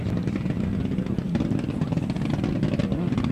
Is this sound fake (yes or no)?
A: no